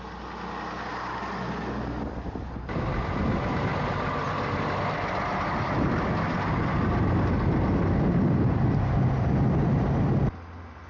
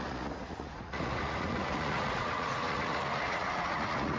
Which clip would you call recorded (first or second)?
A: first